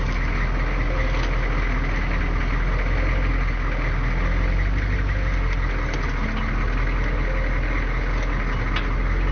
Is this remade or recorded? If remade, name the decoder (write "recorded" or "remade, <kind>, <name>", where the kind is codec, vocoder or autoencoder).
recorded